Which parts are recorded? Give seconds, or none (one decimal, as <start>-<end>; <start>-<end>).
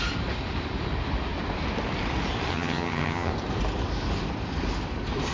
0.0-2.5; 3.3-5.3